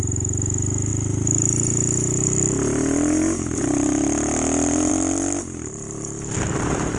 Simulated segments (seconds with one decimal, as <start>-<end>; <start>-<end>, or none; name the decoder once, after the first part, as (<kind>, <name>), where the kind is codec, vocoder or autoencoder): none